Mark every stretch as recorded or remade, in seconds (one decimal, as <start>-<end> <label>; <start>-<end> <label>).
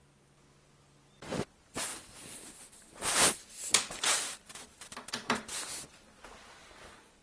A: 0.0-1.9 recorded; 1.9-6.2 remade; 6.2-7.2 recorded